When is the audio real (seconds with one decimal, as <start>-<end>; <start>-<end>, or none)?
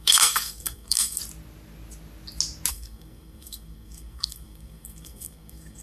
1.2-2.7